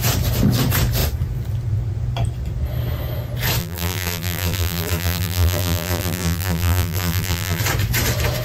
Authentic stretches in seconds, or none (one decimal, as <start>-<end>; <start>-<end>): 0.0-3.6; 7.6-8.4